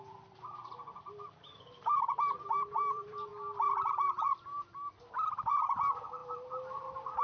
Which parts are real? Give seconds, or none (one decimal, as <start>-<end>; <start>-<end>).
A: none